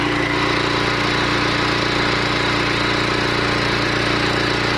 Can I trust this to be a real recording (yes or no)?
yes